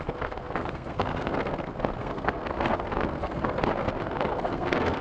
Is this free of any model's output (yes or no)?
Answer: no